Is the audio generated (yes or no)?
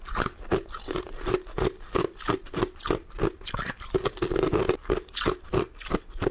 no